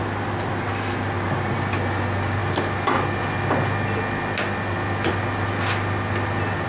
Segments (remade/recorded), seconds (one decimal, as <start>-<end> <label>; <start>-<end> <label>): 0.0-6.7 recorded